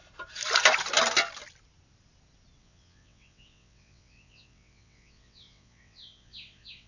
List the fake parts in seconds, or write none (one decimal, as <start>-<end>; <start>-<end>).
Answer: 2.6-6.9